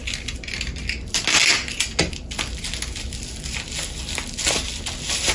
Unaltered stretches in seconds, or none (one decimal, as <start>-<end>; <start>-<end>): 0.0-5.3